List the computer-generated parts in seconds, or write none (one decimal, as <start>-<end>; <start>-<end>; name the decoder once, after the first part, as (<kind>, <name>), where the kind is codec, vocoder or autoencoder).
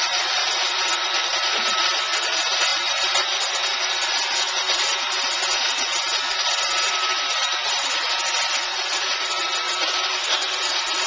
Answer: 7.1-8.1 (vocoder, BigVGAN v2)